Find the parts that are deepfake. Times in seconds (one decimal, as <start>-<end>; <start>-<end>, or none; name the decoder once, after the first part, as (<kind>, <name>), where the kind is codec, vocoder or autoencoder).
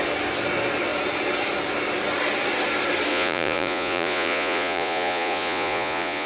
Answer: 3.1-6.3 (vocoder, Vocos)